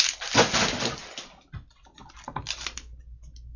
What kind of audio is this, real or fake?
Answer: real